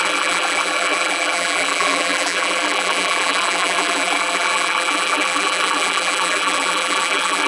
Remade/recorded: remade